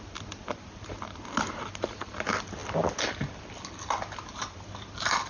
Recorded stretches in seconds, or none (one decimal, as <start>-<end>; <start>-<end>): 0.0-5.3